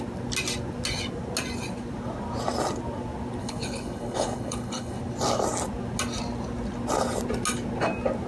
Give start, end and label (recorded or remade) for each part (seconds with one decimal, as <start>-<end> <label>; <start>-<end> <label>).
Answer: 0.0-3.4 recorded; 3.4-5.0 remade; 5.0-8.3 recorded